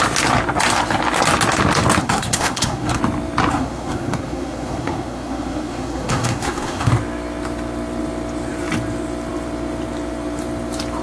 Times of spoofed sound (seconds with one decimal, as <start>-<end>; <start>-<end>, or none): 2.0-3.0; 3.5-6.9